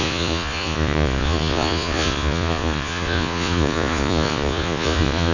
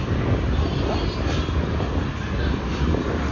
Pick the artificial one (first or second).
first